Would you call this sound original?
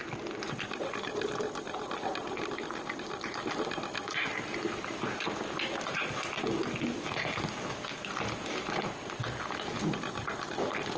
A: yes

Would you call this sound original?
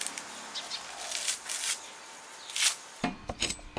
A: yes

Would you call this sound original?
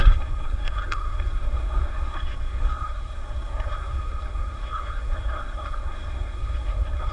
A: no